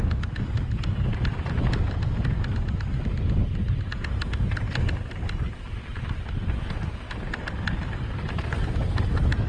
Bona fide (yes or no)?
yes